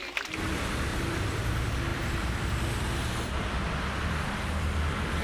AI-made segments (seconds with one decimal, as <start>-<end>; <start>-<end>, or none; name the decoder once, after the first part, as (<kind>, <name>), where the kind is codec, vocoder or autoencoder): 0.9-1.5 (vocoder, BigVGAN v2); 1.9-4.2